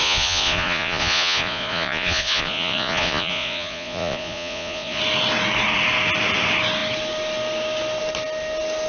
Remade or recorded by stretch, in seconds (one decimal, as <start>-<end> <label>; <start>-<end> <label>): 0.0-5.0 remade; 5.0-8.9 recorded